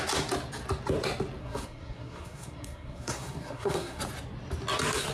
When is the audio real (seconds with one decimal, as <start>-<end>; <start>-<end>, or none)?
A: 0.0-1.4; 4.0-5.1